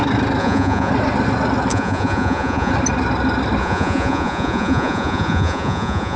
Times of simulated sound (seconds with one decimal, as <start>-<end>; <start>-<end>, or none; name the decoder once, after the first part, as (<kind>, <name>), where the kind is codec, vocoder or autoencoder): 0.4-0.9 (vocoder, Vocos); 1.7-2.7; 3.6-6.2